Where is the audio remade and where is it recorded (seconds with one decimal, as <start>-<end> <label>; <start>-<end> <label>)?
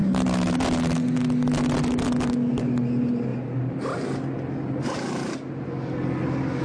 0.0-6.6 recorded